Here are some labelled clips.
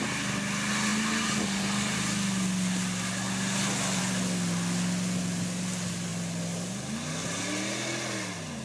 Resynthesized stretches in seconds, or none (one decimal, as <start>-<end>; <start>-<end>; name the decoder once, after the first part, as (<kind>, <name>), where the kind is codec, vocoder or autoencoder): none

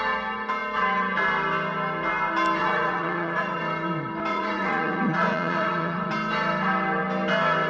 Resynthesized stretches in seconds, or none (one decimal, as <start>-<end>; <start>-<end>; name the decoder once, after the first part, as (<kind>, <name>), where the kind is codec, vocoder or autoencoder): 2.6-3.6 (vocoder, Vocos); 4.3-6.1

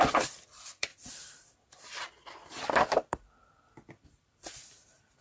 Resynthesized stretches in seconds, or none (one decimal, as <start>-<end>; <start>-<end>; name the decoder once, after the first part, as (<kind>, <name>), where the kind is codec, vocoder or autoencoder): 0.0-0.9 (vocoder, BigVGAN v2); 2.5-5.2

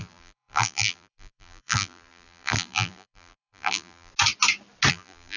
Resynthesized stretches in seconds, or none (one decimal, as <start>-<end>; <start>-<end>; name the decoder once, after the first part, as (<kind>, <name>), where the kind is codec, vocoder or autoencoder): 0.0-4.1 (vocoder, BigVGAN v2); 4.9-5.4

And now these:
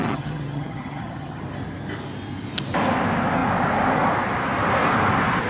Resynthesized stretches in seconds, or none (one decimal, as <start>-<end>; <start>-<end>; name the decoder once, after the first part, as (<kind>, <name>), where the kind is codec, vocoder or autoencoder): 0.0-1.4 (vocoder, HiFi-GAN)